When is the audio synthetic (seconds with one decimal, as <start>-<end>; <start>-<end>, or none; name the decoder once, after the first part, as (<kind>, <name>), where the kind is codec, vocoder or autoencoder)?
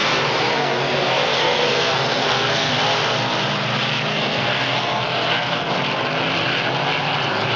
0.0-2.7 (codec, SNAC); 4.1-5.7